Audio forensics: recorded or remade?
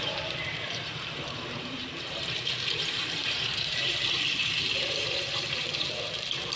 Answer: remade